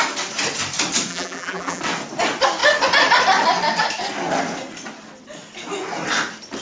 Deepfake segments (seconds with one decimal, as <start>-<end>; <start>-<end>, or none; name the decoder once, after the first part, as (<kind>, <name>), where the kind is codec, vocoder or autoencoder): 1.1-1.8 (vocoder, BigVGAN v2)